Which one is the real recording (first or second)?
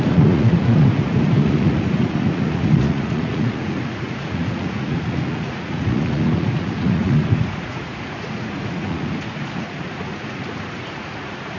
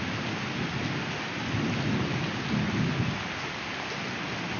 second